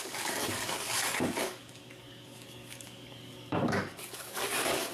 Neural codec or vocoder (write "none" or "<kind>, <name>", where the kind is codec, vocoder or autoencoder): codec, DAC